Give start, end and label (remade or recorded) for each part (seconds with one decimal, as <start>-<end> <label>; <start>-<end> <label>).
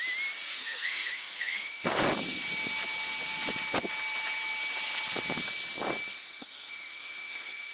0.0-0.5 recorded; 0.5-2.0 remade; 2.0-6.1 recorded; 6.1-7.7 remade